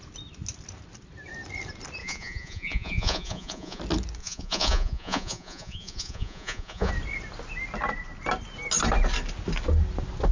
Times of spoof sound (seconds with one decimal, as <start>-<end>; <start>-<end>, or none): 2.0-3.8; 4.2-6.9

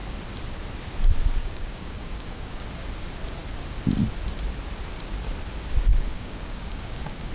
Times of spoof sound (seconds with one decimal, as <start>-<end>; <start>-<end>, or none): 1.4-2.6; 5.9-7.3

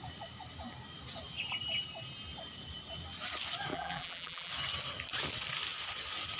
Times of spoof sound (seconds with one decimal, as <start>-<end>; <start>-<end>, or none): 3.7-4.5

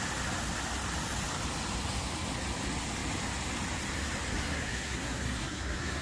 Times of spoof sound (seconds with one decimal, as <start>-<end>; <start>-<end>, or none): 4.3-6.0

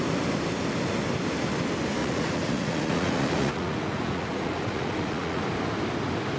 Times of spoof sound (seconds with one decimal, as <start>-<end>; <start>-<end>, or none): 2.0-5.4

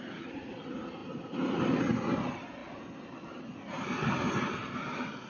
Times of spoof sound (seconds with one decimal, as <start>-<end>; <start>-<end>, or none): none

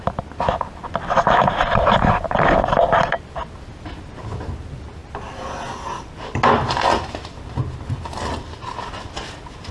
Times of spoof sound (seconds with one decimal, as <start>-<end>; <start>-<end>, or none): none

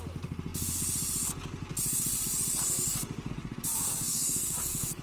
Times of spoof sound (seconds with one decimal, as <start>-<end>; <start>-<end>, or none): 3.7-5.0